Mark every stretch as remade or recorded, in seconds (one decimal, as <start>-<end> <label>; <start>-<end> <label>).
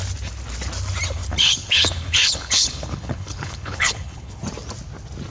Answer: 0.0-1.2 recorded; 1.2-4.4 remade; 4.4-5.3 recorded